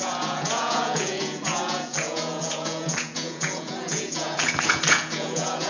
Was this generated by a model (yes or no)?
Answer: yes